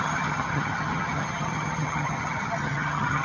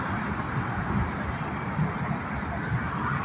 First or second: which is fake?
first